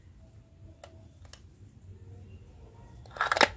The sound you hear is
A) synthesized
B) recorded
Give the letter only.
B